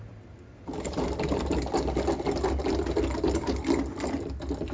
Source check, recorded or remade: recorded